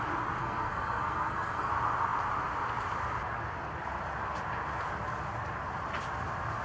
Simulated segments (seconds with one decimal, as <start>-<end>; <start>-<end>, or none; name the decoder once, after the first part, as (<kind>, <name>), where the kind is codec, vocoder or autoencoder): 0.4-1.7 (codec, SNAC)